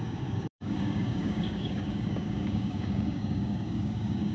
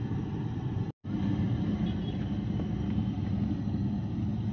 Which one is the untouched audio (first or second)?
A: second